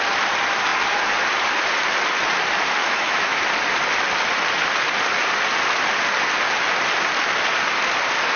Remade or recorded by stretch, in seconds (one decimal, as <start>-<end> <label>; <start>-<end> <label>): 0.0-2.8 recorded; 2.8-3.4 remade; 3.4-8.4 recorded